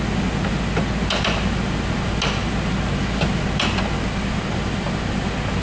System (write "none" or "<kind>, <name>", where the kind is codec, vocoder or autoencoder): none